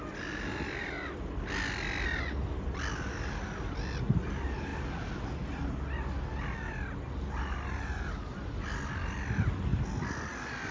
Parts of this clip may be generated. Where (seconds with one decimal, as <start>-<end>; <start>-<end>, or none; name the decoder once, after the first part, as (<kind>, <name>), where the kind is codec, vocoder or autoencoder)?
none